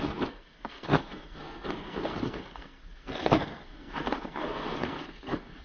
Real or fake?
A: fake